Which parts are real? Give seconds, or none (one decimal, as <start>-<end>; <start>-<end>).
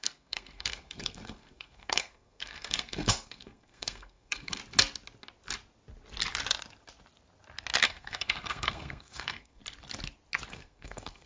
4.6-7.8; 9.6-10.5